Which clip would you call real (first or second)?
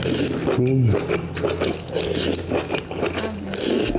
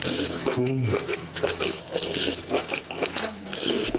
first